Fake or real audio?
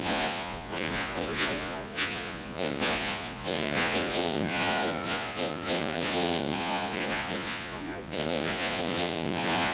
fake